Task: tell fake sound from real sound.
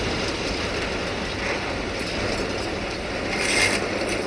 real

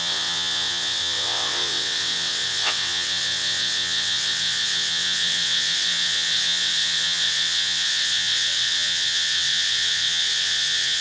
fake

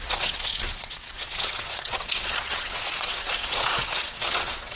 fake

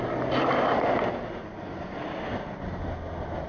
real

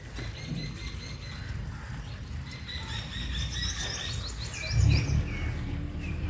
real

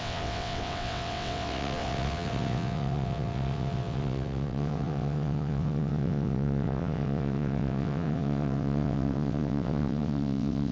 fake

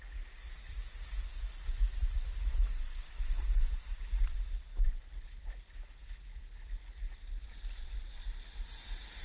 real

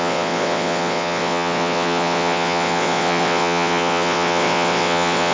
fake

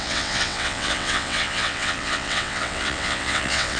fake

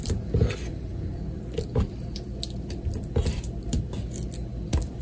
real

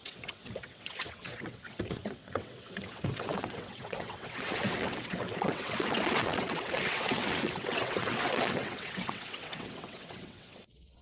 fake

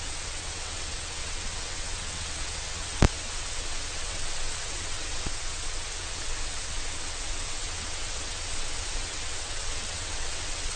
fake